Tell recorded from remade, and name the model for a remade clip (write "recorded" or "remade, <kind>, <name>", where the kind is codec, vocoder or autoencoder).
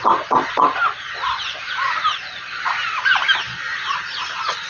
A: recorded